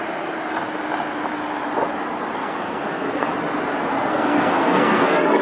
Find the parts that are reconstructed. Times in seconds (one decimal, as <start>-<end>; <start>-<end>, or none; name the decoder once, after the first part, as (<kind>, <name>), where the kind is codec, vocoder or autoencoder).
2.4-3.3 (codec, SNAC); 4.1-5.4